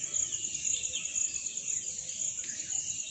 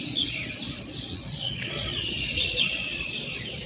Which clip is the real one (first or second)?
first